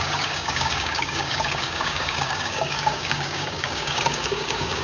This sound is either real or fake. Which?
fake